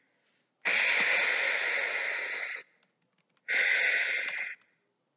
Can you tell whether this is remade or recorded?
recorded